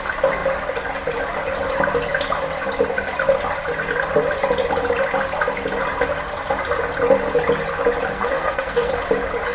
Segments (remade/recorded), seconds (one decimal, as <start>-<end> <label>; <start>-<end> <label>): 0.0-8.1 recorded; 8.1-8.9 remade; 8.9-9.5 recorded